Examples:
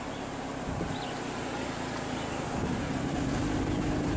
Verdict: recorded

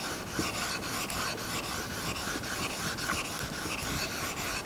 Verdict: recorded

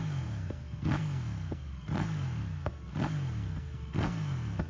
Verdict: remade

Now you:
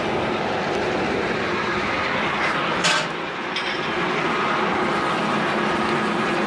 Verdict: recorded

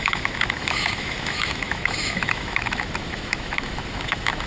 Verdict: remade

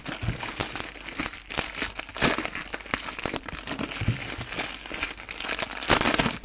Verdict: recorded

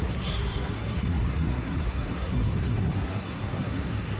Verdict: remade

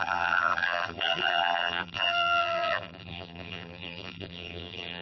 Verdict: remade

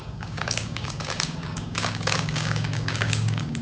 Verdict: remade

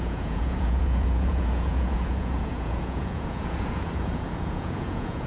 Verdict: remade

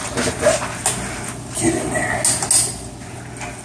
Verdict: recorded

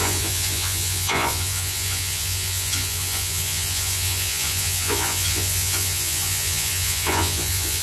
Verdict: remade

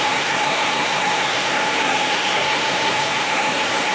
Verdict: remade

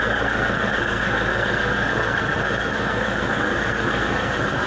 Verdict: remade